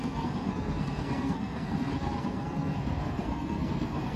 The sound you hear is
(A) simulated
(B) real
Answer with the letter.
A